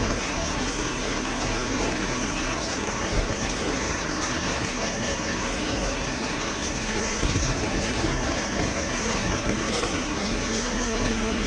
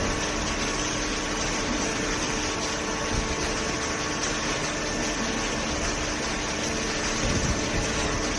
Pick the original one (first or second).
second